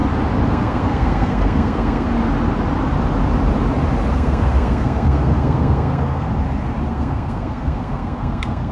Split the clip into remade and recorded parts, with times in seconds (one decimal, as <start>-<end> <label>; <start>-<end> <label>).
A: 0.0-0.5 recorded; 0.5-2.1 remade; 2.1-4.1 recorded; 4.1-6.3 remade; 6.3-6.9 recorded; 6.9-8.7 remade